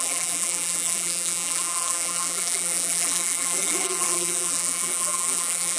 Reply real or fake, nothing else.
fake